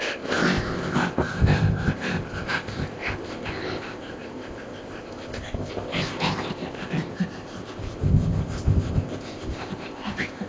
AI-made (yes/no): yes